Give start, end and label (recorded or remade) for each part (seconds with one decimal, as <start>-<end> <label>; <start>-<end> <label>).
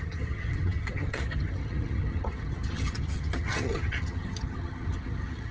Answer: 0.0-5.5 remade